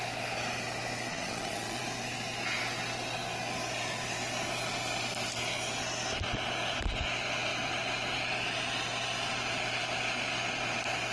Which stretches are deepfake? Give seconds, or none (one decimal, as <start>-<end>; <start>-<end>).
1.1-1.8